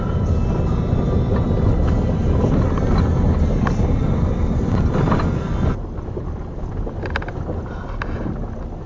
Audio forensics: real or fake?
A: real